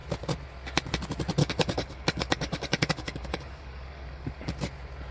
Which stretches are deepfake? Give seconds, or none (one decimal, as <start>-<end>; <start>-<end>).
1.4-4.5